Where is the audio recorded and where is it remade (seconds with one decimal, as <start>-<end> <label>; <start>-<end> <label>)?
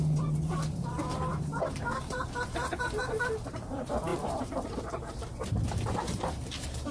0.0-6.9 remade